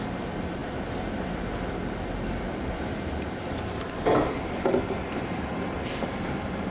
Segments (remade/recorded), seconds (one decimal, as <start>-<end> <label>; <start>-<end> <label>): 0.0-0.6 recorded; 0.6-1.3 remade; 1.3-2.5 recorded; 2.5-6.7 remade